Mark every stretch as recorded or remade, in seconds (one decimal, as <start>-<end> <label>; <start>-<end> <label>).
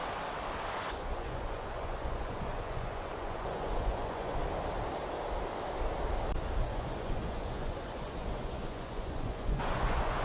0.0-0.7 recorded; 0.7-4.4 remade; 4.4-6.6 recorded; 6.6-10.2 remade